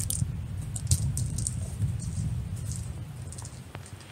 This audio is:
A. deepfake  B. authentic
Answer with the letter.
B